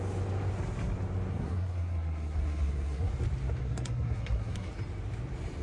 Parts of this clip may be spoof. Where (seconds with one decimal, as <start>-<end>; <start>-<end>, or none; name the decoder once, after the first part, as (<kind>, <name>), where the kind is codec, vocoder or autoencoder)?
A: 1.3-3.1 (codec, SNAC); 3.6-4.7